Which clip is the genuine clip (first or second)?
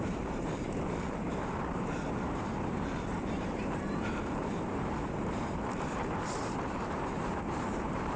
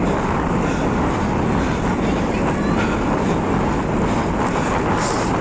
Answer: second